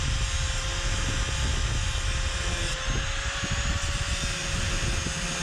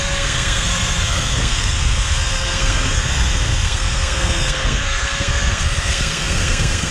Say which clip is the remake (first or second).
second